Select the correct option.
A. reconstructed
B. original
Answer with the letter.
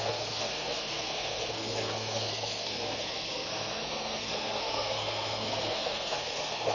A